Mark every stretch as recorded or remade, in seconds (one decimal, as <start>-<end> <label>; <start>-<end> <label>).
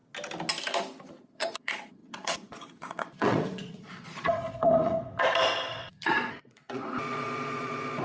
0.0-1.2 recorded; 1.2-5.1 remade; 5.1-5.7 recorded; 5.7-8.0 remade